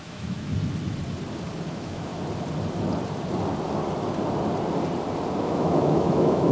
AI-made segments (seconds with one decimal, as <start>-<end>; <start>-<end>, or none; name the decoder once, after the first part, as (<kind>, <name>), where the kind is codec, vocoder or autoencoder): 0.0-0.5 (autoencoder, DAC-VAE); 1.7-2.1; 5.4-6.5